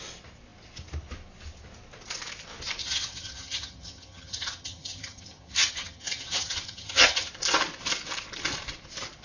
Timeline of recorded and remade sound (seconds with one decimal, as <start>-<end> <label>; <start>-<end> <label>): 0.0-2.8 recorded; 2.8-7.3 remade; 7.3-9.2 recorded